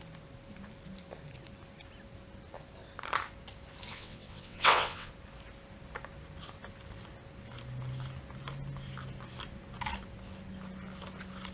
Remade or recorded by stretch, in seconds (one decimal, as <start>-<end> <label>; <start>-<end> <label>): 0.0-3.9 recorded; 3.9-5.1 remade; 5.1-11.5 recorded